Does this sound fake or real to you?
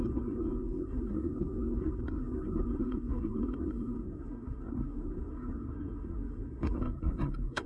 fake